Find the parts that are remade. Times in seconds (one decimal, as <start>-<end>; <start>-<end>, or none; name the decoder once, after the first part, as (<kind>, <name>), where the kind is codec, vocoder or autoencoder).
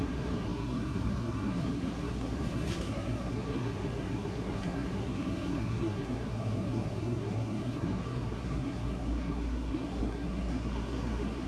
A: 0.0-11.5 (codec, SNAC)